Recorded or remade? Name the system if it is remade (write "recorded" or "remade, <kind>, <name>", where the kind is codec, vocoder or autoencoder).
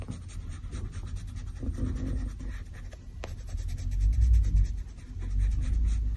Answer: recorded